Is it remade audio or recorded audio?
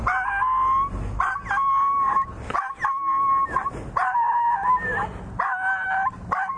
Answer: recorded